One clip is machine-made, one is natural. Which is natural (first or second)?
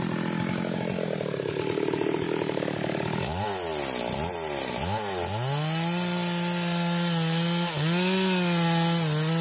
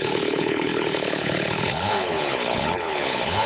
first